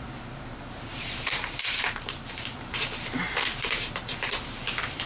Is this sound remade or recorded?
remade